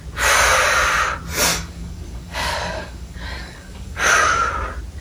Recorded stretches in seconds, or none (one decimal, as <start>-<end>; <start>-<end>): 0.0-1.5; 4.5-5.0